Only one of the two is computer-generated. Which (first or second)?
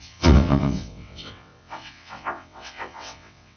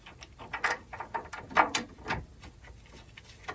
first